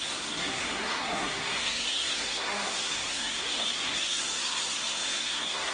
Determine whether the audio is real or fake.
fake